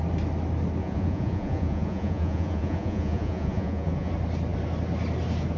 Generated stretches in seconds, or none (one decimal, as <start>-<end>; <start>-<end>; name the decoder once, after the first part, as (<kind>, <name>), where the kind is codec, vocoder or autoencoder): 0.8-4.1 (vocoder, Vocos)